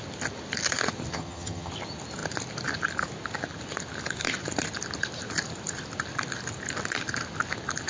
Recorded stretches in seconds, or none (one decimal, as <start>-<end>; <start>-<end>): 0.0-1.1; 1.7-7.9